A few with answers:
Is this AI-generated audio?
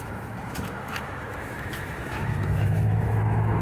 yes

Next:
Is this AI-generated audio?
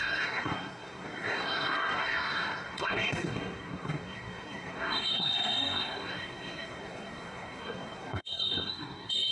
yes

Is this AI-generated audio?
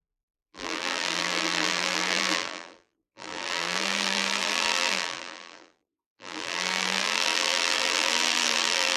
yes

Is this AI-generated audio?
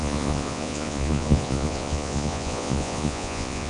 yes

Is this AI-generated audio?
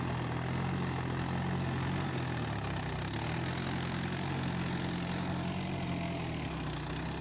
no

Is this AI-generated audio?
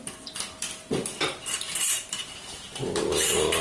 no